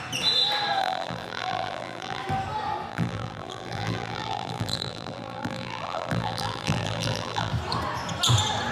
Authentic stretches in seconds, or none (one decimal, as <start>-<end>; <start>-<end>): 0.0-0.8; 2.2-2.9; 7.5-8.7